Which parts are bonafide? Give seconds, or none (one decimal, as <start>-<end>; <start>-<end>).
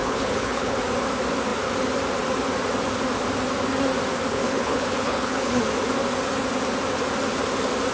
0.8-4.3; 5.6-7.9